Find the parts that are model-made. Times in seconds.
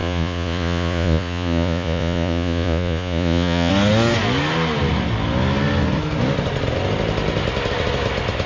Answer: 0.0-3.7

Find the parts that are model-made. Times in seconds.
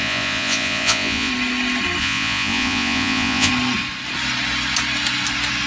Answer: 0.0-1.3; 2.0-3.5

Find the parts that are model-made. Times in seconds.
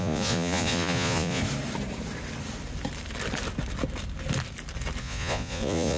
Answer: 0.0-1.4; 5.0-6.0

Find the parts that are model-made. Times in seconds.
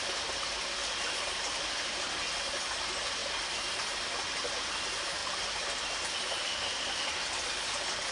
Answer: none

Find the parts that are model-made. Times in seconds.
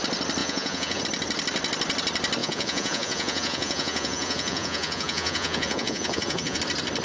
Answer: 0.4-1.0; 2.4-6.6